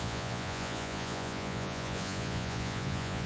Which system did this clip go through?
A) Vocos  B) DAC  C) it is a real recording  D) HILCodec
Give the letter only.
A